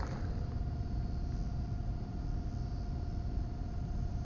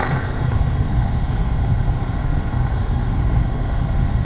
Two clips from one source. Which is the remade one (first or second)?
second